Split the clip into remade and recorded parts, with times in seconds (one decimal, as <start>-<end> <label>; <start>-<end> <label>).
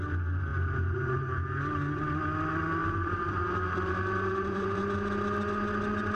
0.0-2.8 recorded; 2.8-4.8 remade; 4.8-6.2 recorded